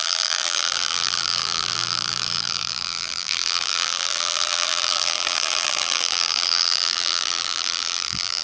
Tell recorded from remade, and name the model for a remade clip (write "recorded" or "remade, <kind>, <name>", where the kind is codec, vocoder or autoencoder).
remade, vocoder, BigVGAN v2